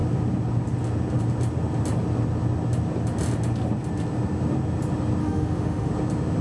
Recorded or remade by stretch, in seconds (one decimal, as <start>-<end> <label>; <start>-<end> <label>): 0.0-5.2 recorded; 5.2-5.9 remade; 5.9-6.4 recorded